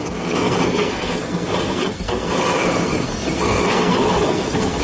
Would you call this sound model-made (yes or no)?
yes